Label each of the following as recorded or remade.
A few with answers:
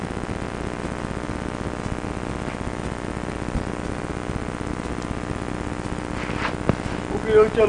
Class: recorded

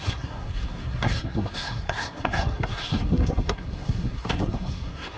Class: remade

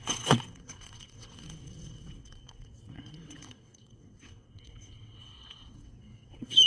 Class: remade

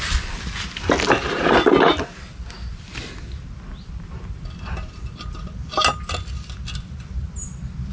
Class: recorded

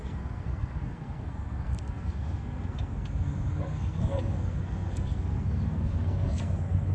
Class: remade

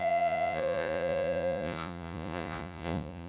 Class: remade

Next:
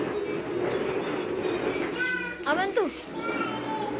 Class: recorded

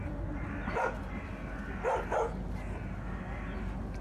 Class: recorded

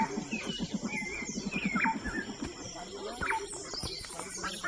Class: recorded